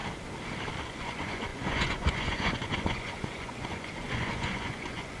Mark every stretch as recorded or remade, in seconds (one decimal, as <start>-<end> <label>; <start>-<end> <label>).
0.0-0.8 recorded; 0.8-5.2 remade